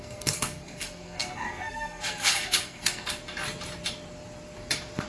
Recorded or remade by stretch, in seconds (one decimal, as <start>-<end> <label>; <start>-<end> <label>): 0.0-3.2 remade; 3.2-5.1 recorded